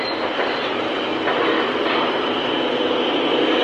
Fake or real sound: real